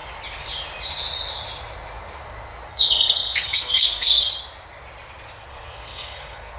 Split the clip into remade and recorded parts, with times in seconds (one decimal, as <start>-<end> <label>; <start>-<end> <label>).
0.0-2.7 recorded; 2.7-4.3 remade; 4.3-5.5 recorded; 5.5-6.6 remade